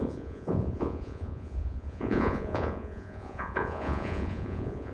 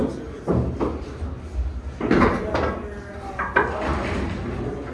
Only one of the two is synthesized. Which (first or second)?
first